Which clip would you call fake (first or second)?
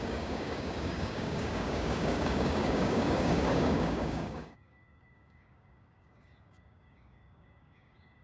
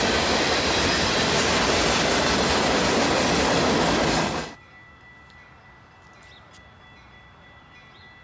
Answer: first